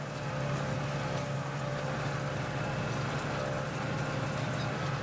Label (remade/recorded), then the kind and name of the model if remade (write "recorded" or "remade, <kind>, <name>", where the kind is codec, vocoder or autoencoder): recorded